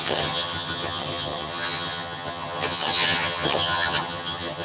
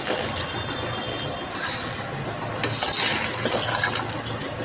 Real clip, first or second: second